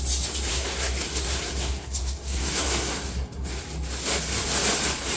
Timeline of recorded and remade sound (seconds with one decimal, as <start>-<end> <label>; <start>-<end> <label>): 0.0-0.5 recorded; 0.5-3.6 remade; 3.6-5.2 recorded